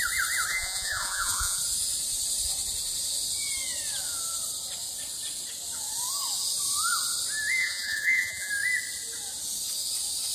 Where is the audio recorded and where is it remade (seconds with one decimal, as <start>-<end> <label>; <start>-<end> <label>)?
0.0-0.5 recorded; 0.5-1.6 remade; 1.6-7.6 recorded; 7.6-8.5 remade; 8.5-10.3 recorded